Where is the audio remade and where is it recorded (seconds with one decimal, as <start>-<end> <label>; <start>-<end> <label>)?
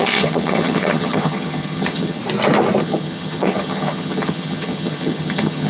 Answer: 0.0-2.2 remade; 2.2-2.8 recorded; 2.8-5.7 remade